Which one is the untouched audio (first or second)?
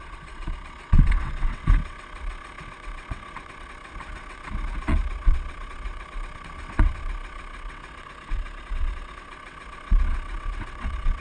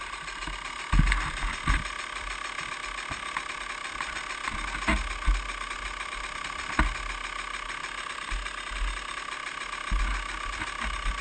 second